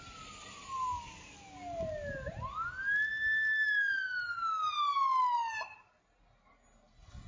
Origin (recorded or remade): recorded